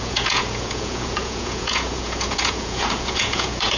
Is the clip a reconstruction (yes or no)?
yes